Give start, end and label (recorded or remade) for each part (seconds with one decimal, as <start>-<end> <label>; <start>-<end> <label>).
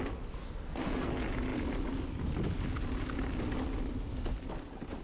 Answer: 0.0-0.4 recorded; 0.4-1.1 remade; 1.1-5.0 recorded